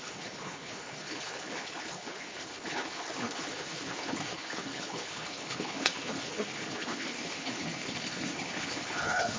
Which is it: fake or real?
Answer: fake